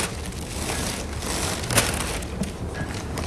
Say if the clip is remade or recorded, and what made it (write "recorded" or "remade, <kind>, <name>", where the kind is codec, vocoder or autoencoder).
recorded